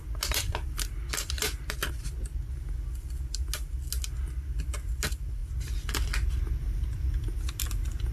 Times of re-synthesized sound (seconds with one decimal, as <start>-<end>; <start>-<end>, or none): none